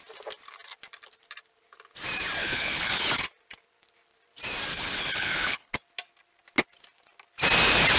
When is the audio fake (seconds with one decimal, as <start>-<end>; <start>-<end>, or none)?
2.4-3.0; 4.7-5.7

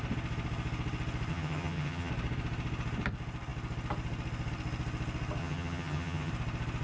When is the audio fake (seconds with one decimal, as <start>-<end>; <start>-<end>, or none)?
1.3-2.1; 5.4-6.3

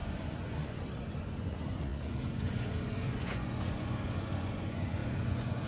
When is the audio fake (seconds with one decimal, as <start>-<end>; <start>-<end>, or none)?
0.0-5.7

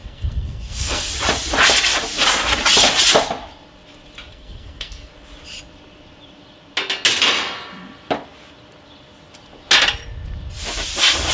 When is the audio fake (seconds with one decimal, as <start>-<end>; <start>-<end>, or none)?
0.0-1.1; 4.3-5.1

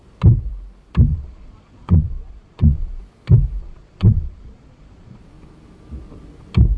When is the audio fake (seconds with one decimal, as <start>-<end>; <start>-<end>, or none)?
1.1-3.0; 3.6-5.2

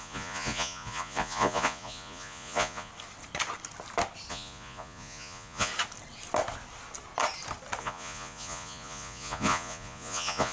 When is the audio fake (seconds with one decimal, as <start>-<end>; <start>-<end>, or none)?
0.0-2.9; 4.3-5.7; 7.8-10.5

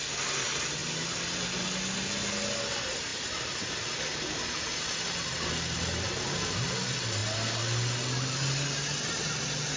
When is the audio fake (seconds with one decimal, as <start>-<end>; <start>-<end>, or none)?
none

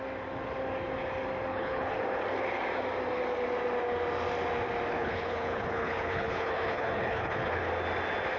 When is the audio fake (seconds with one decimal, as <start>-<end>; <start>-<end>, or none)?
1.5-2.0; 4.9-7.7